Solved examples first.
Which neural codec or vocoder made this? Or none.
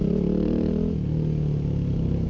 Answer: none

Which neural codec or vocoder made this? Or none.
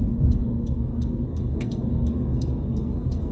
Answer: codec, SNAC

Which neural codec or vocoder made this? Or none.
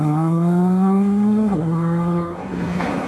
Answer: codec, SNAC